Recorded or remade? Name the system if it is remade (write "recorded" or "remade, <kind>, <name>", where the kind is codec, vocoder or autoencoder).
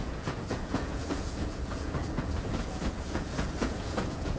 remade, vocoder, Vocos